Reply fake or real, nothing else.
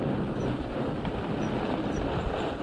fake